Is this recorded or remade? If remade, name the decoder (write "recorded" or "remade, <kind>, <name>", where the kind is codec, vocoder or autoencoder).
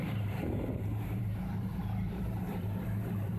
remade, vocoder, BigVGAN v2